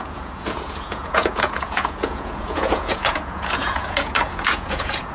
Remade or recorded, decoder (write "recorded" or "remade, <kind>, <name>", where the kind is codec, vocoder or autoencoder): remade, vocoder, Vocos